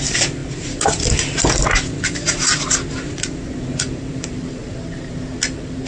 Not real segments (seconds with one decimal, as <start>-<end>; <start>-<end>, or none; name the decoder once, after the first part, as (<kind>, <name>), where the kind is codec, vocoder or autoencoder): none